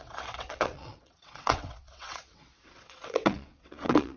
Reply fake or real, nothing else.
fake